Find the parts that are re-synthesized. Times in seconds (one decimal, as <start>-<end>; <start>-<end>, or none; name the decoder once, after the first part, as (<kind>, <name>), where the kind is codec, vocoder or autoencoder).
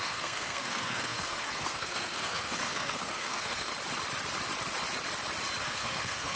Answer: 0.0-3.7 (codec, SNAC); 5.6-6.4